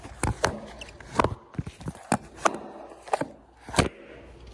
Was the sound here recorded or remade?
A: recorded